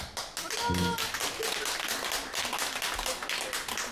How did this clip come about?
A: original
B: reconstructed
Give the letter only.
A